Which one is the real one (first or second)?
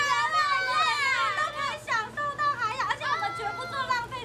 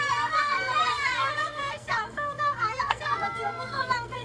first